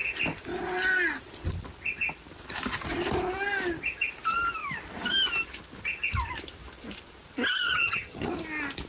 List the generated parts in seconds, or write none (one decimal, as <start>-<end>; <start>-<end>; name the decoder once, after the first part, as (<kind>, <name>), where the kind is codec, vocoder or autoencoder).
7.7-8.3 (vocoder, HiFi-GAN)